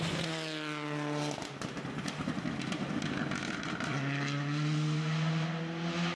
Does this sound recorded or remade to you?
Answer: recorded